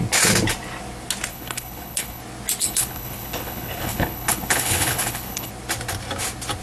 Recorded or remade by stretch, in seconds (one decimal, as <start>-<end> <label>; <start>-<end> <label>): 0.0-1.3 recorded; 1.3-2.2 remade; 2.2-2.6 recorded; 2.6-5.5 remade; 5.5-6.6 recorded